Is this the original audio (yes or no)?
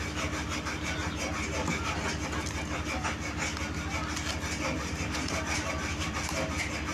yes